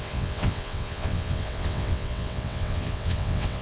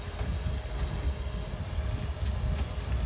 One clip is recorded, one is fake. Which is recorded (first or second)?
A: second